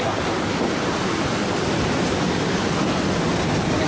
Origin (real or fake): real